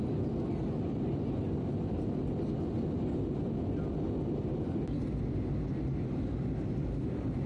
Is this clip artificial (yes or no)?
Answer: no